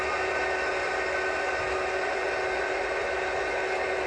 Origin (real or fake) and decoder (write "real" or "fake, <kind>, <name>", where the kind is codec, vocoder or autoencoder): real